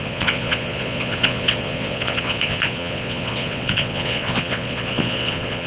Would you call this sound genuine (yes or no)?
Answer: no